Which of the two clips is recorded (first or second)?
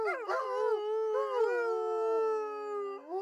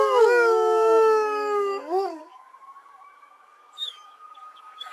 first